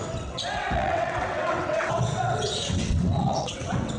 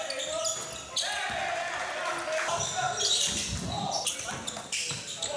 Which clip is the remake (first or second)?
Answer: first